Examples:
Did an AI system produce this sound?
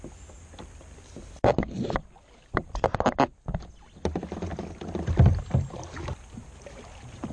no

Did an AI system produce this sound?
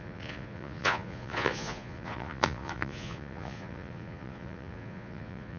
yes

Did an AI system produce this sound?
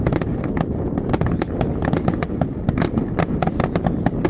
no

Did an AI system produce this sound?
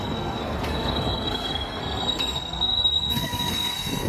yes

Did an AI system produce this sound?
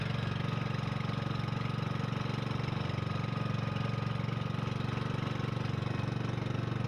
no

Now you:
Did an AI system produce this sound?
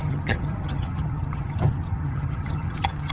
yes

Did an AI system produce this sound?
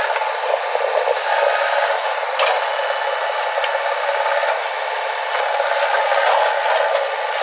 no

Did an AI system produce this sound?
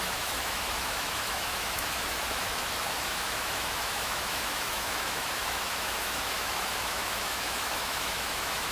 yes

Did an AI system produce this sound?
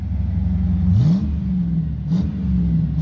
no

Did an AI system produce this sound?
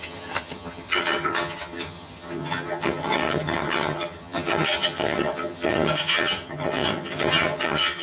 yes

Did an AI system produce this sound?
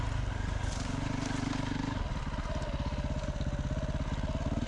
no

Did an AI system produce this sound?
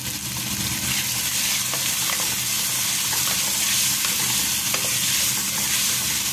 no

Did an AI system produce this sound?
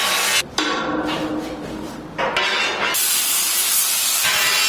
no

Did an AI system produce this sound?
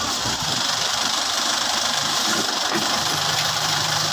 yes